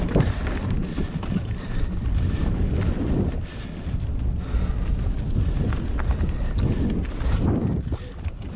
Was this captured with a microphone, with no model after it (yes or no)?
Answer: yes